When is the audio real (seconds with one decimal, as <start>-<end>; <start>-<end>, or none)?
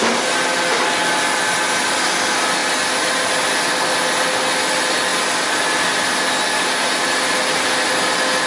0.0-8.5